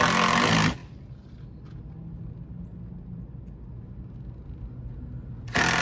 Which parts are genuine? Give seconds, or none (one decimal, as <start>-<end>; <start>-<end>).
0.0-5.8

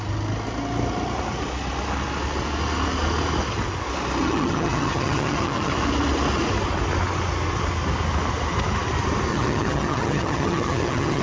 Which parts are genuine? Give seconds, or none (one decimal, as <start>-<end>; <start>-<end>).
0.0-4.2; 5.7-9.3